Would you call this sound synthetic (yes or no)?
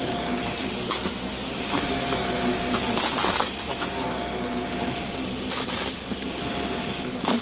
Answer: no